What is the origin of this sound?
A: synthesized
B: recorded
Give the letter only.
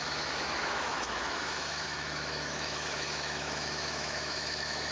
A